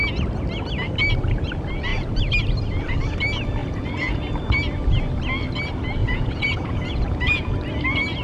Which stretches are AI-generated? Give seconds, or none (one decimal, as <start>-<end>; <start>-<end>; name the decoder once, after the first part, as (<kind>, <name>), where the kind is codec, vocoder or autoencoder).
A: 3.6-4.2 (vocoder, Vocos); 6.0-7.5